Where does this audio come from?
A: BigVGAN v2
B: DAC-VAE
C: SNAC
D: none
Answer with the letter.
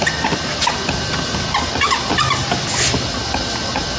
D